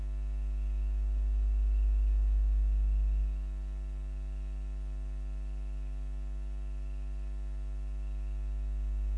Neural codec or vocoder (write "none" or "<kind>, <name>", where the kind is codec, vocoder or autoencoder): none